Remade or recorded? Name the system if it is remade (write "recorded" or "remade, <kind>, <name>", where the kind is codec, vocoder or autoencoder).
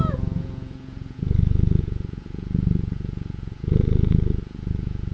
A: remade, vocoder, Vocos